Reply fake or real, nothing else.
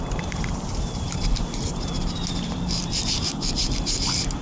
fake